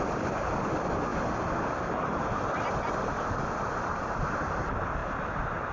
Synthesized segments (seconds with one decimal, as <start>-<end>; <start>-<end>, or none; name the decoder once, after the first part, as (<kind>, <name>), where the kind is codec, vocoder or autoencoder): none